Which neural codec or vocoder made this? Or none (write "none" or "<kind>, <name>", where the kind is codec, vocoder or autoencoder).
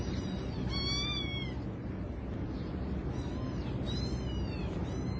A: none